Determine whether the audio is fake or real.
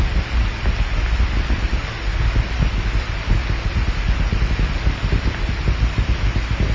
real